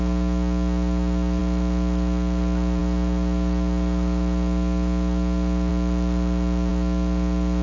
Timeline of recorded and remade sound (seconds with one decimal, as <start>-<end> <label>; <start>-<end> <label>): 0.0-7.6 recorded

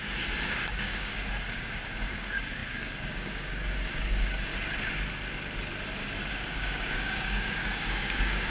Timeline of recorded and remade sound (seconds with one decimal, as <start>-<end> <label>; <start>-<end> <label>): 0.0-4.5 remade; 4.5-6.3 recorded; 6.3-8.5 remade

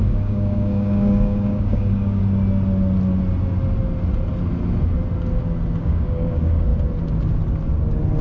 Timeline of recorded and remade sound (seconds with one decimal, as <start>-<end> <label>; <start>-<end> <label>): 0.0-2.2 remade; 2.2-5.8 recorded; 5.8-6.7 remade; 6.7-8.2 recorded

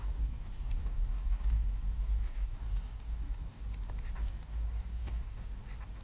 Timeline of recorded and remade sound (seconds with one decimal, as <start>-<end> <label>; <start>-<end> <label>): 0.0-3.6 remade; 3.6-4.2 recorded; 4.2-5.5 remade; 5.5-6.0 recorded

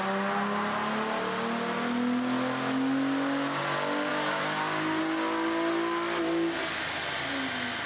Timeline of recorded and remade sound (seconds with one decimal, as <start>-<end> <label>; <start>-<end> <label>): 0.0-4.1 recorded; 4.1-5.0 remade; 5.0-7.9 recorded

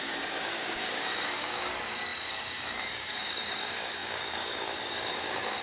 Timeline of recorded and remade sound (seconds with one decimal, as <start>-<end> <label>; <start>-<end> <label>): 0.0-5.6 remade

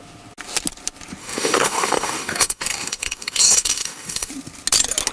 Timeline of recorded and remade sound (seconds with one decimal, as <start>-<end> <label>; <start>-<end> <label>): 0.0-1.2 recorded; 1.2-4.3 remade; 4.3-5.1 recorded